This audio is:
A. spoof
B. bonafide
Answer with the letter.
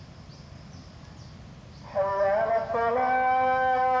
B